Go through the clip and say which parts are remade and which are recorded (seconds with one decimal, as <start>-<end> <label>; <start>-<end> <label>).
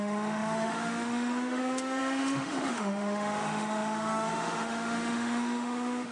0.0-6.1 remade